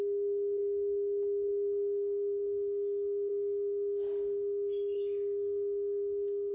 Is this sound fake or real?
real